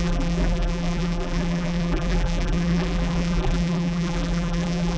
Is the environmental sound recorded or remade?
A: remade